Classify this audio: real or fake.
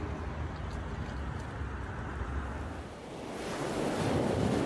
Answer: real